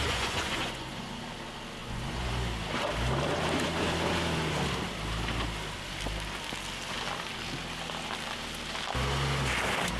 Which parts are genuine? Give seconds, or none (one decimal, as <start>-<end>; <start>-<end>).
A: 1.2-1.8; 2.3-10.0